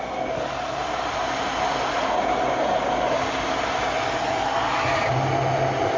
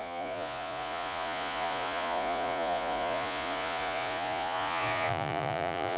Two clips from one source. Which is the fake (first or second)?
second